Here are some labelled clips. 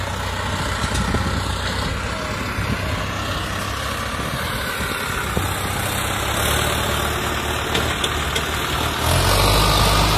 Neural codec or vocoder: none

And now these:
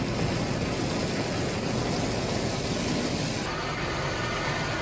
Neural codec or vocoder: none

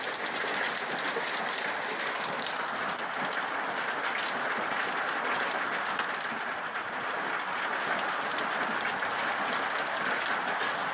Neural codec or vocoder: none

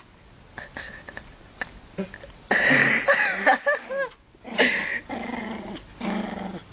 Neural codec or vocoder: none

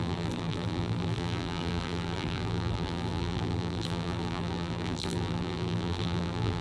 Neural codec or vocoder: vocoder, BigVGAN v2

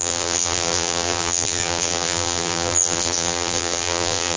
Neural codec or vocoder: vocoder, BigVGAN v2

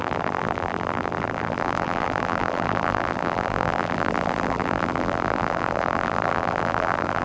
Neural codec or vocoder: vocoder, BigVGAN v2